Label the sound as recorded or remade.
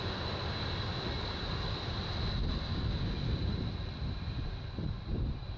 recorded